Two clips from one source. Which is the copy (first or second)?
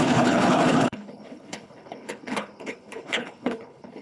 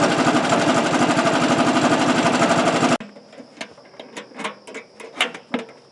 first